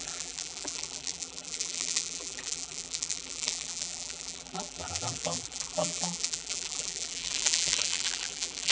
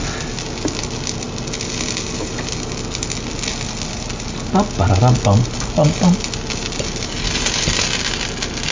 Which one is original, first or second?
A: second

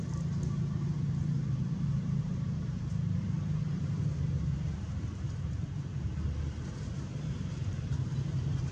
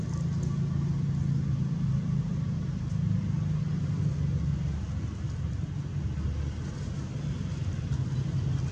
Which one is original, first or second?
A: second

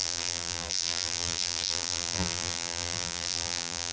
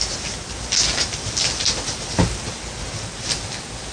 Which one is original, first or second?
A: second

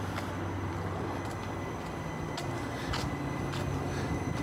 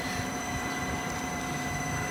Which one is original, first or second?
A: first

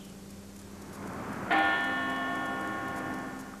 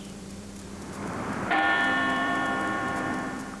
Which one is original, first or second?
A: first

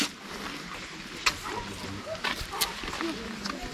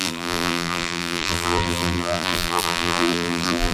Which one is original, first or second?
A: first